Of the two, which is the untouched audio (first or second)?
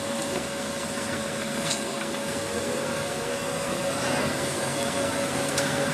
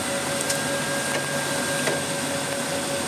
second